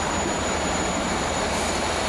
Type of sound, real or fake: fake